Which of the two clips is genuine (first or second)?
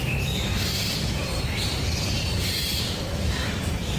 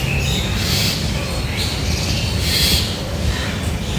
second